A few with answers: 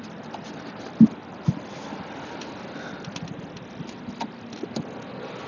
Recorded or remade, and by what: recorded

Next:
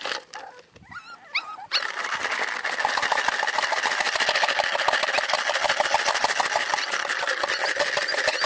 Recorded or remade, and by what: recorded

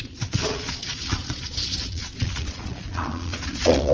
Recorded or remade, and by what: remade, vocoder, Vocos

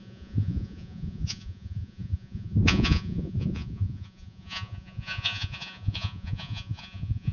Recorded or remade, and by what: remade, vocoder, Vocos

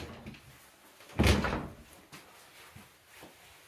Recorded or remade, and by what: recorded